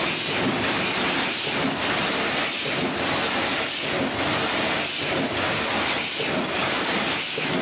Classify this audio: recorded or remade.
recorded